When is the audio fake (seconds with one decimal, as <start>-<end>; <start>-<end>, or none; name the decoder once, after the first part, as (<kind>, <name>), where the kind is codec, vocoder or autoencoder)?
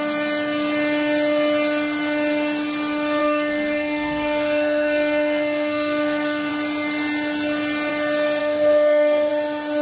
3.2-6.5 (codec, SNAC); 8.4-9.3